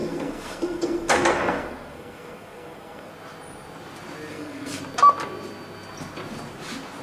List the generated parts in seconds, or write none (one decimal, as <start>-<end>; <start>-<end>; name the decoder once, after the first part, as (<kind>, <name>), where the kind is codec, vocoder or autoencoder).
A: 0.0-3.1 (codec, SNAC); 4.3-4.8